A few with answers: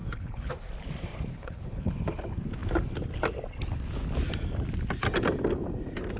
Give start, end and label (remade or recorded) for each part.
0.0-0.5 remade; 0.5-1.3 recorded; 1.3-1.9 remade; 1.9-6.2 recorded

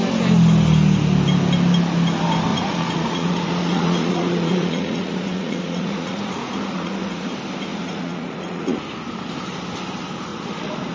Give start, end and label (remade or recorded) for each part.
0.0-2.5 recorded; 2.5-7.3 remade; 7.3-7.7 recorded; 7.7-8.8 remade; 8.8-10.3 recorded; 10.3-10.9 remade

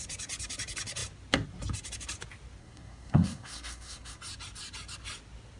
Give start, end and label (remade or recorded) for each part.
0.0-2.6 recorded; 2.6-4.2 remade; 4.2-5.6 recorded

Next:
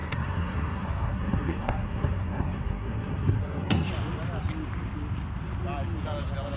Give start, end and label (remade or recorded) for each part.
0.0-3.9 remade; 3.9-6.6 recorded

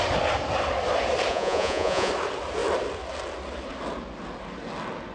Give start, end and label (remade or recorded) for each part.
0.0-1.3 recorded; 1.3-2.1 remade; 2.1-5.1 recorded

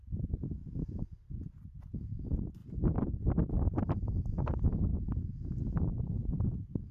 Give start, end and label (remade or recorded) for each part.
0.0-0.6 remade; 0.6-1.8 recorded; 1.8-2.6 remade; 2.6-3.8 recorded; 3.8-4.9 remade; 4.9-5.6 recorded; 5.6-6.9 remade